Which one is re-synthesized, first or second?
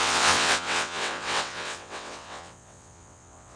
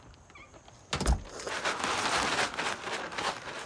first